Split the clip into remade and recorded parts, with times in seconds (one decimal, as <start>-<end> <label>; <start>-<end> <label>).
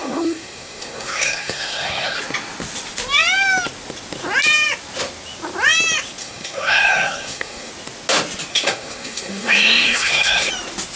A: 0.0-2.2 remade; 2.2-6.2 recorded; 6.2-7.7 remade; 7.7-8.5 recorded; 8.5-10.5 remade; 10.5-11.0 recorded